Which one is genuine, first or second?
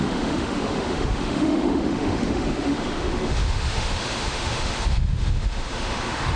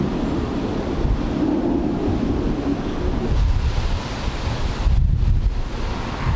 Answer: second